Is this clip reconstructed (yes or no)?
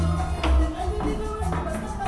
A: no